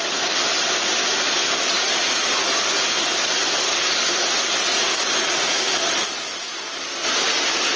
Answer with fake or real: real